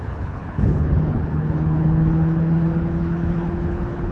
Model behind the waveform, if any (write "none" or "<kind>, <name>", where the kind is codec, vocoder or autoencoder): codec, HILCodec